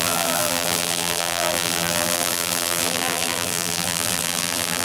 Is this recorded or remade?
remade